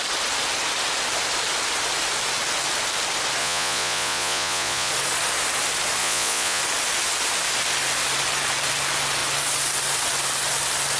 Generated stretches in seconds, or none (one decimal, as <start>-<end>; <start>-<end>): 3.4-4.9; 6.0-6.6